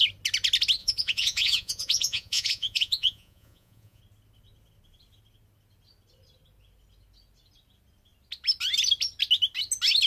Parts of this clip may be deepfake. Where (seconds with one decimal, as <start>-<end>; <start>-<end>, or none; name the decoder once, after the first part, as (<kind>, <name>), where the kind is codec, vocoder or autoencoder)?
0.8-4.0 (vocoder, Vocos)